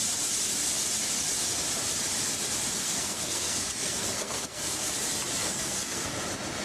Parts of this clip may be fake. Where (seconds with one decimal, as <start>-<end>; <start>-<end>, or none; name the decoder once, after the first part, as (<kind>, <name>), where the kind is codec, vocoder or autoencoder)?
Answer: 2.8-4.9 (codec, SNAC); 5.4-6.1